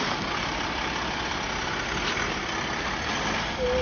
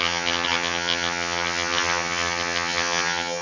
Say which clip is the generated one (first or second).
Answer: second